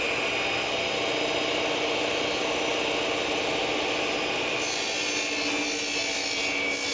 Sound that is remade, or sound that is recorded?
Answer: recorded